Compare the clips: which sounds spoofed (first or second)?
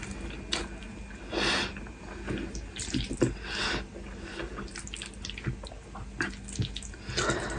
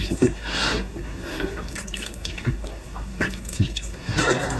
second